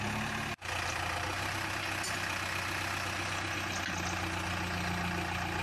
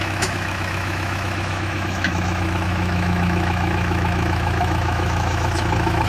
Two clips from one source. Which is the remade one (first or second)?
second